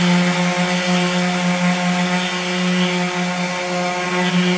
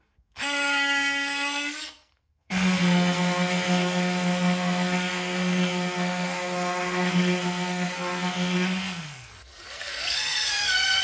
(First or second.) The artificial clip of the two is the second